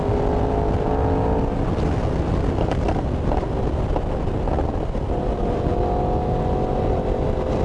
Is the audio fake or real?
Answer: real